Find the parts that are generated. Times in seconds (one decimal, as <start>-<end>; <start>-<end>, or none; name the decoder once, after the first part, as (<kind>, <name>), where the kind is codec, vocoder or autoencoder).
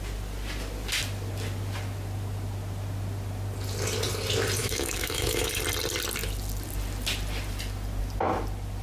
4.6-5.5 (autoencoder, DAC-VAE)